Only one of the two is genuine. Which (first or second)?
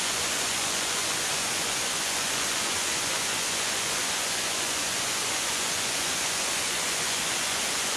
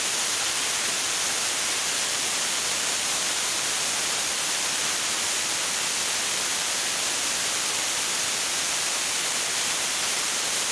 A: second